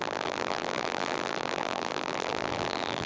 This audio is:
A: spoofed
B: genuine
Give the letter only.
A